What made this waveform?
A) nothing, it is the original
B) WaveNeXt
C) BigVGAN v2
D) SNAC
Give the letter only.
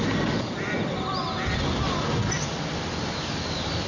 A